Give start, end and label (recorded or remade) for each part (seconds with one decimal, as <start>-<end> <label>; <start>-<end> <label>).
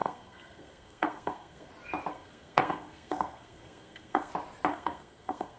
0.0-1.7 remade; 1.7-2.1 recorded; 2.1-4.3 remade; 4.3-4.7 recorded; 4.7-5.6 remade